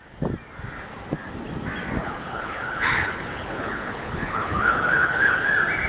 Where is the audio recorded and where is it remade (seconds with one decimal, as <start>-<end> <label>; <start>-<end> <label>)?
0.0-2.0 recorded; 2.0-5.5 remade; 5.5-5.9 recorded